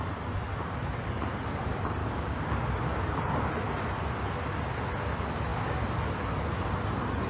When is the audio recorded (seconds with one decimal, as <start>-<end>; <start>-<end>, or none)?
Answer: 0.0-2.0; 2.9-7.3